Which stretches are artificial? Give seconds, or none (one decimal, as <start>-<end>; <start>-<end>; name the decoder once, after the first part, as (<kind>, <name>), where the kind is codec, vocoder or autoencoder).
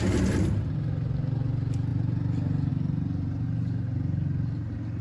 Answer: none